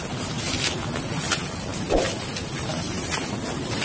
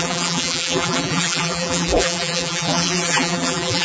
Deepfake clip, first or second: second